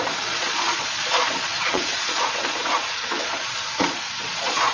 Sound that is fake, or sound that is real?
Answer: fake